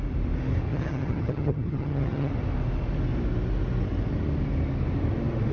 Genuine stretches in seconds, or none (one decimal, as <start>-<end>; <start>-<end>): 0.0-0.7; 2.3-5.5